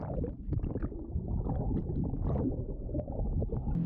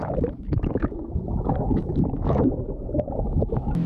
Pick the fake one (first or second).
second